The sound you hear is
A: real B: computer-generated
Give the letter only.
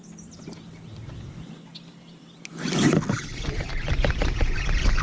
A